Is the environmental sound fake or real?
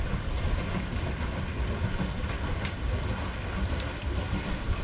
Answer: real